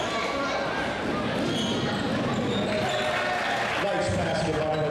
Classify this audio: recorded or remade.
recorded